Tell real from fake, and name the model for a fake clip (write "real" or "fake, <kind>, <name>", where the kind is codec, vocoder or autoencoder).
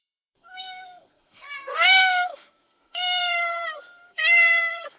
fake, codec, SNAC